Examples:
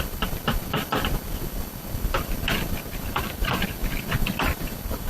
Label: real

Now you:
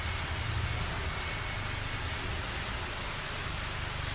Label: real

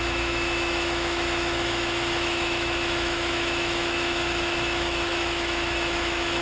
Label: fake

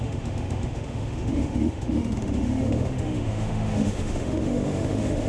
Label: fake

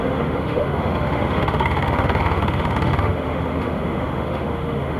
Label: fake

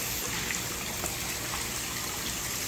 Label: real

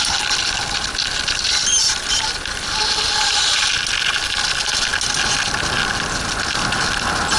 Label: real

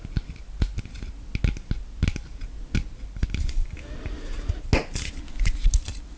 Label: real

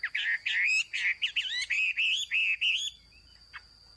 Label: real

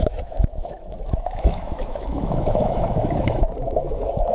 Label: fake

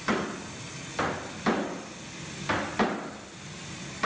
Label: real